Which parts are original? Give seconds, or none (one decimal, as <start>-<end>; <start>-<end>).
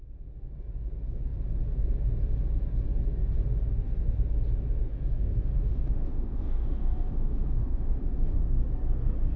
0.0-4.9; 8.4-9.4